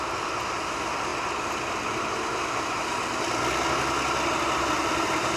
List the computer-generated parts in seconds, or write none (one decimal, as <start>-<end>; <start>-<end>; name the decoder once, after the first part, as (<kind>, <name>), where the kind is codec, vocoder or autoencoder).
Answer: 0.0-1.1 (vocoder, BigVGAN v2); 4.3-5.4